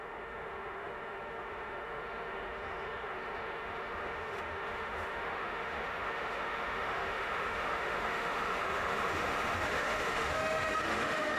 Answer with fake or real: fake